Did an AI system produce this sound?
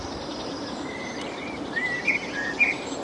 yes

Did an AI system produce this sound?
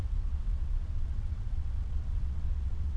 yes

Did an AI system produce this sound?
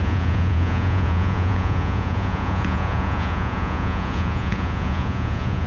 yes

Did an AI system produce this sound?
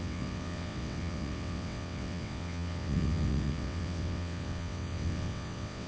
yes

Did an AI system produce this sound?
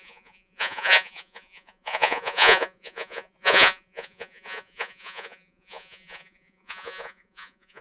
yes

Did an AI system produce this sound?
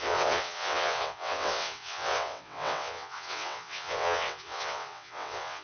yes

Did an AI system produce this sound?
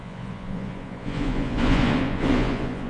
yes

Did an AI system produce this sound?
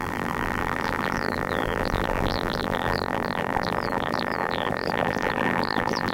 yes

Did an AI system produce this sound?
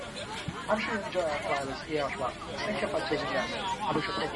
no